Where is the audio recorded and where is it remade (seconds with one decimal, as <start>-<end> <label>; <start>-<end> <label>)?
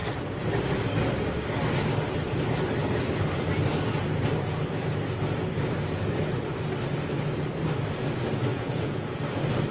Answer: 0.0-8.5 recorded; 8.5-9.2 remade; 9.2-9.7 recorded